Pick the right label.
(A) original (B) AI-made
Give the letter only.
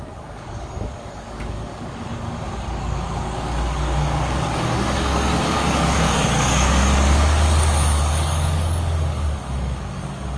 B